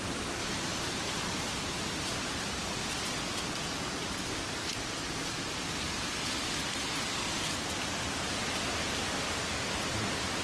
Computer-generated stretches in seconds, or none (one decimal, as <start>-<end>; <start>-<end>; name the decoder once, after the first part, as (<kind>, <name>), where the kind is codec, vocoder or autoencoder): 0.4-2.4 (vocoder, BigVGAN v2)